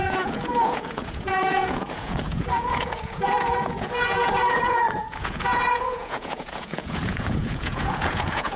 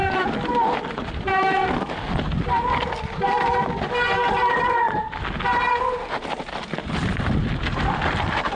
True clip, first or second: second